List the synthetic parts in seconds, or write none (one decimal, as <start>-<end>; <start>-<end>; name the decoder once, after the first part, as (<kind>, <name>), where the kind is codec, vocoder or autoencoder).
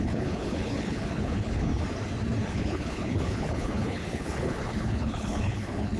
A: 0.0-1.7 (codec, HILCodec); 2.5-6.0